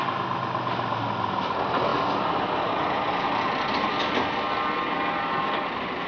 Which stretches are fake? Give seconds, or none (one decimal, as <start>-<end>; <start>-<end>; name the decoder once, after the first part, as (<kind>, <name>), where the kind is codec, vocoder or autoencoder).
none